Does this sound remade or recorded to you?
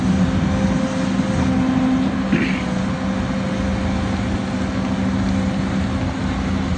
recorded